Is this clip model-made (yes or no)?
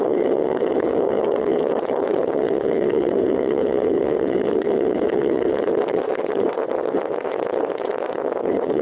yes